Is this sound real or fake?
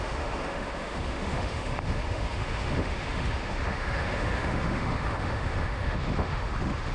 fake